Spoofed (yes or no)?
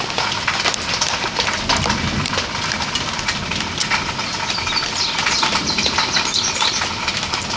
yes